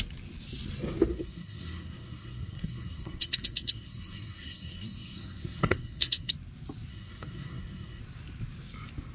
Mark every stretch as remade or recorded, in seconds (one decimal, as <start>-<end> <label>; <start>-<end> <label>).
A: 0.0-1.1 recorded; 1.1-6.3 remade; 6.3-6.9 recorded; 6.9-8.0 remade; 8.0-9.1 recorded